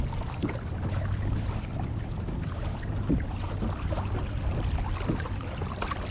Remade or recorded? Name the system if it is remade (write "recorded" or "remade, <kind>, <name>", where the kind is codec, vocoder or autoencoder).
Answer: recorded